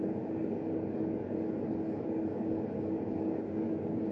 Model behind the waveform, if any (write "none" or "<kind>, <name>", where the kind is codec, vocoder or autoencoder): codec, DAC